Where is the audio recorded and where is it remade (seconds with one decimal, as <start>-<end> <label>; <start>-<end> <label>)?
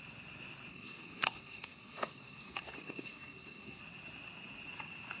0.0-0.7 recorded; 0.7-3.8 remade; 3.8-5.2 recorded